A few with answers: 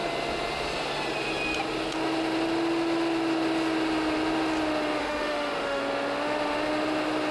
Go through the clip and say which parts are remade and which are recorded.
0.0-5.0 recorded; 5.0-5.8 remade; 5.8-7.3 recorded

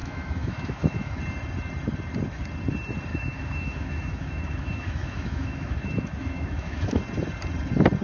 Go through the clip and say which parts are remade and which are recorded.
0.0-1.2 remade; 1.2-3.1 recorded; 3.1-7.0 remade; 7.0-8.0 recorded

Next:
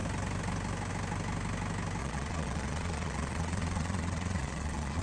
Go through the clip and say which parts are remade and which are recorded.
0.0-2.0 recorded; 2.0-5.0 remade